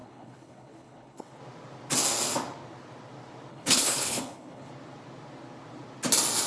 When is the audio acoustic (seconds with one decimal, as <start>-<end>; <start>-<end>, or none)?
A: 1.4-3.5; 4.7-6.5